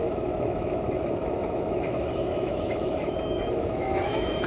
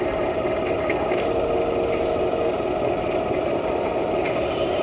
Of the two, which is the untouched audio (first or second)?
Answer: second